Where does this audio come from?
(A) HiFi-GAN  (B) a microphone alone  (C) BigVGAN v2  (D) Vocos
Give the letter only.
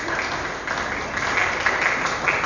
B